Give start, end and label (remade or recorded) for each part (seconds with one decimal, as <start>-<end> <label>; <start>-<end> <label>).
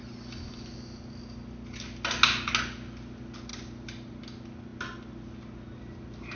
0.0-6.4 recorded